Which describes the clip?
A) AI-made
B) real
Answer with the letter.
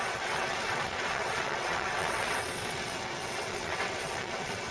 A